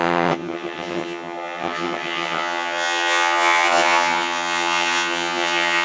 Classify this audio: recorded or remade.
remade